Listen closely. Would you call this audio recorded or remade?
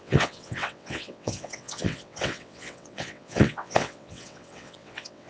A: remade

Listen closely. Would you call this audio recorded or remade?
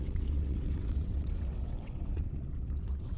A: remade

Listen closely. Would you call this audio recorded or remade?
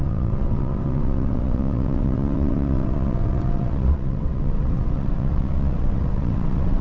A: remade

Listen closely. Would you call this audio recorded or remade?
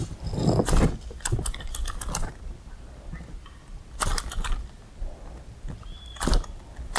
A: recorded